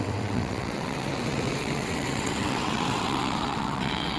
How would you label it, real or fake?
fake